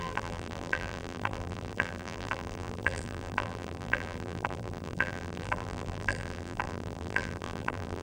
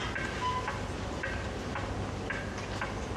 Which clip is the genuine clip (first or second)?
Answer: second